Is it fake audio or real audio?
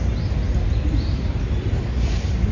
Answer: real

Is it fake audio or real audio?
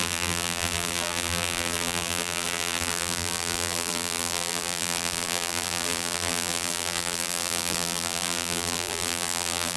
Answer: fake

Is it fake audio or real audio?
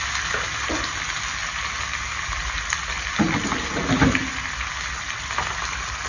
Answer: real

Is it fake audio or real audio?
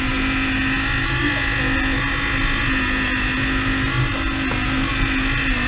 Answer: real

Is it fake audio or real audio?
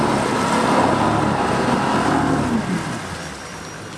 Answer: real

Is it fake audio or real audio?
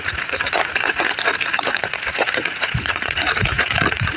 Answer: fake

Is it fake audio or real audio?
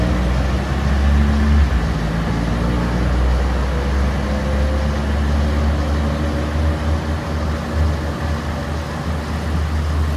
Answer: real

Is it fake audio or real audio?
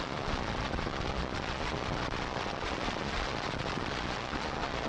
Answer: fake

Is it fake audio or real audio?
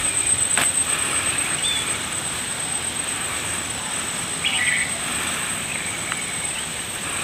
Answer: fake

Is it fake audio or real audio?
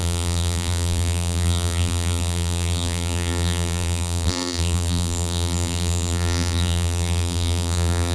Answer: fake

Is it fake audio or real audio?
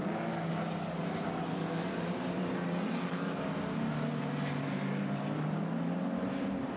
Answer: real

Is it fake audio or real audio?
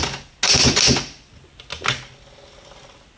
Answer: real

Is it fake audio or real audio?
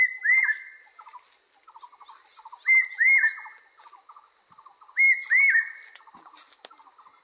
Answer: real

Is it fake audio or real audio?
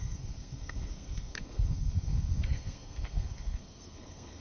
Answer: fake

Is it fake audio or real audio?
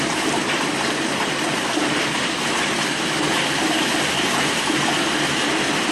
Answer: real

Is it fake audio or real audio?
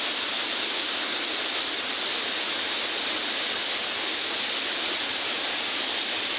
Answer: real